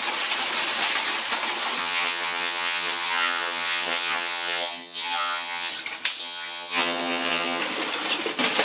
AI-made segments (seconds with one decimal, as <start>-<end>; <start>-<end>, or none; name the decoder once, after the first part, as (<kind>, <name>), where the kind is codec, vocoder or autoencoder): 1.8-5.7 (vocoder, HiFi-GAN); 6.2-7.6